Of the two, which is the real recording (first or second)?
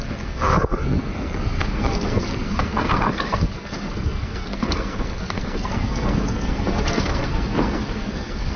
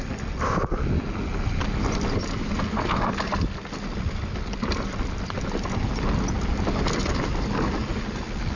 second